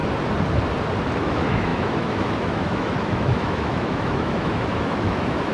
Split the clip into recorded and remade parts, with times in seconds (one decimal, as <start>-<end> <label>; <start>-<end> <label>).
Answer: 0.0-1.2 recorded; 1.2-5.5 remade